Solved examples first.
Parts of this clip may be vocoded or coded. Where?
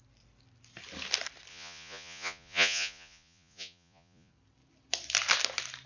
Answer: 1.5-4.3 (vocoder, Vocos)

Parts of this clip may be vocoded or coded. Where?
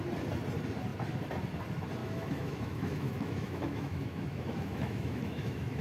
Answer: 2.0-5.8 (autoencoder, DAC-VAE)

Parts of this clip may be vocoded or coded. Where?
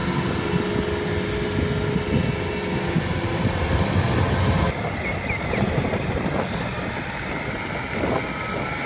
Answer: none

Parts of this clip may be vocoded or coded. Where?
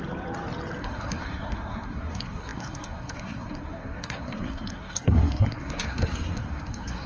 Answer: 0.8-7.1 (codec, SNAC)